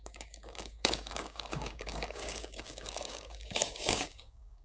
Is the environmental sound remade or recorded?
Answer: remade